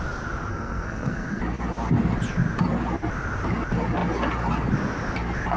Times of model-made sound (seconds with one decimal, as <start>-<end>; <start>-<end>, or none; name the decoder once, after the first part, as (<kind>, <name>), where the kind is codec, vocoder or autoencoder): 0.5-1.4 (codec, SNAC)